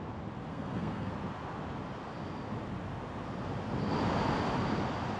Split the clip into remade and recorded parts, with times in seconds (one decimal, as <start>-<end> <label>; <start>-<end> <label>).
0.0-0.5 recorded; 0.5-1.1 remade; 1.1-5.2 recorded